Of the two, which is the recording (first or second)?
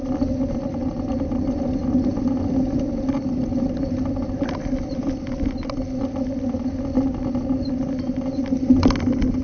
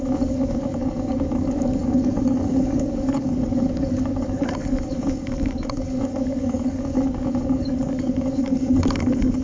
first